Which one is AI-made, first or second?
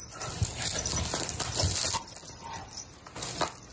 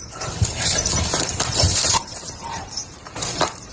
second